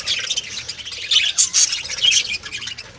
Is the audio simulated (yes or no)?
no